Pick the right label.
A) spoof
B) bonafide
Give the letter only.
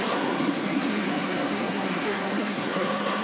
A